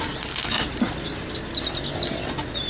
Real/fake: real